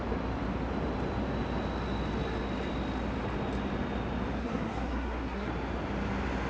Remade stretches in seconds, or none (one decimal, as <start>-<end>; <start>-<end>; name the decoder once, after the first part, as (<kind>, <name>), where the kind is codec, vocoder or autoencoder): 4.4-5.5 (codec, SNAC)